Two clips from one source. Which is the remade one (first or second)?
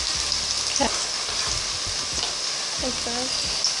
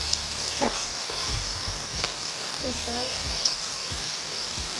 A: second